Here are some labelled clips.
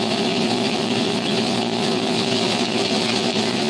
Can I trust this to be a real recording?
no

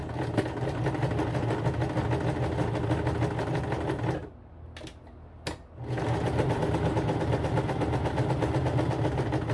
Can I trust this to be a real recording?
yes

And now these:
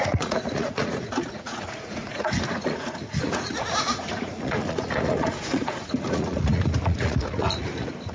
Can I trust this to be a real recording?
no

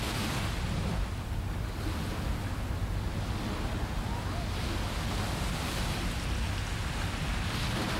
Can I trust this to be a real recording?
yes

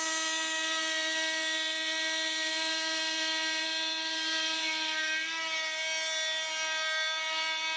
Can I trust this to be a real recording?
yes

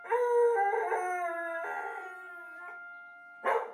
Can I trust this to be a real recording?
yes